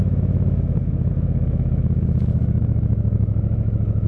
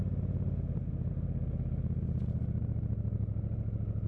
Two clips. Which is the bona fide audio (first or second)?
second